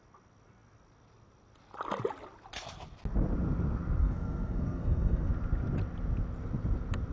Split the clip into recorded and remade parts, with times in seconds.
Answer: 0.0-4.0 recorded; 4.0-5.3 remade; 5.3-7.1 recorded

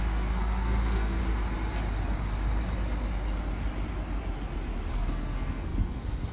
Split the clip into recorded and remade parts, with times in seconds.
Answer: 0.0-1.2 remade; 1.2-4.9 recorded; 4.9-6.3 remade

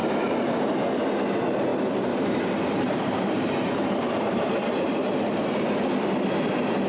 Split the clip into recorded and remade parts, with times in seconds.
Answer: 0.0-1.7 recorded; 1.7-5.6 remade; 5.6-6.9 recorded